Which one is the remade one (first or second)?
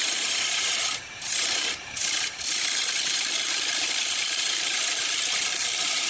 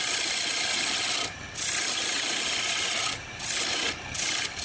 first